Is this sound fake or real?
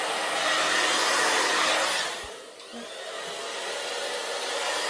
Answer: real